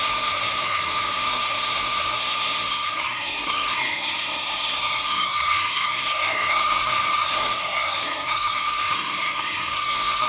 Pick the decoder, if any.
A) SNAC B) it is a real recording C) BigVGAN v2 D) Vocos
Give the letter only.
A